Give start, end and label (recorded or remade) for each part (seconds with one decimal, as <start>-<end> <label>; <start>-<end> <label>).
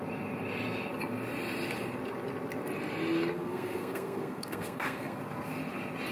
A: 0.0-3.3 recorded; 3.3-5.2 remade; 5.2-6.1 recorded